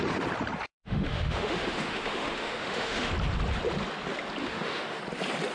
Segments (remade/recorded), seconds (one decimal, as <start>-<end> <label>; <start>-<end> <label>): 0.0-0.7 recorded; 0.7-3.1 remade; 3.1-4.4 recorded; 4.4-5.0 remade; 5.0-5.5 recorded